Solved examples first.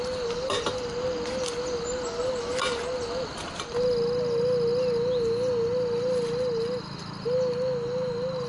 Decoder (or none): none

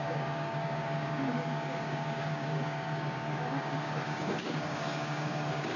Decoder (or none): codec, DAC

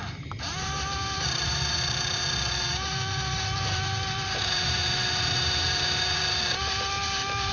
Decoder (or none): vocoder, BigVGAN v2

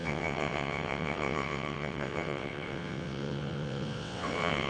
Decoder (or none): vocoder, WaveNeXt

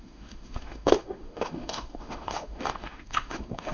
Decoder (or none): autoencoder, DAC-VAE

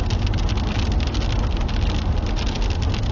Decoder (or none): none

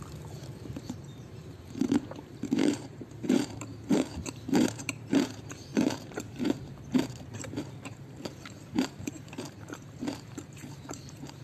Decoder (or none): vocoder, BigVGAN v2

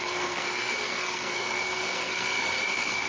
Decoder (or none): codec, SNAC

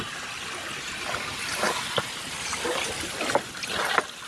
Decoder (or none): none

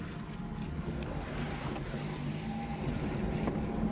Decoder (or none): none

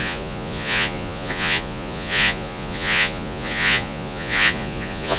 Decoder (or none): vocoder, Vocos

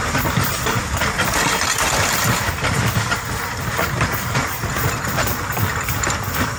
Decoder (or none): vocoder, BigVGAN v2